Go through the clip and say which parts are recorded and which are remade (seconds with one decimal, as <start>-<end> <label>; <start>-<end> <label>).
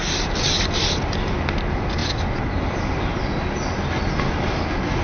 0.0-5.0 recorded